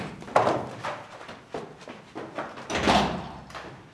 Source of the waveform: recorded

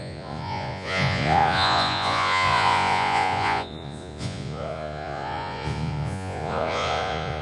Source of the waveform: remade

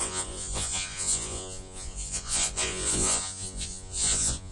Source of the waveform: remade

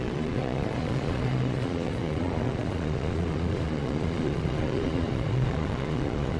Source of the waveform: remade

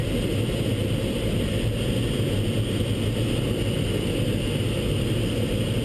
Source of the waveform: recorded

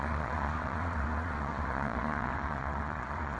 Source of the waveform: remade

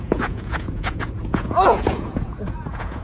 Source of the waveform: remade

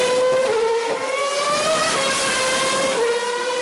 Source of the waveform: recorded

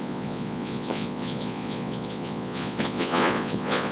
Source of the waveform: remade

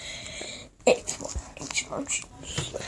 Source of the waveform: recorded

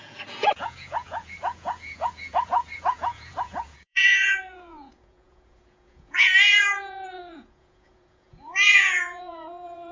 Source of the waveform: remade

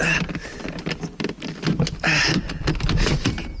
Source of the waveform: recorded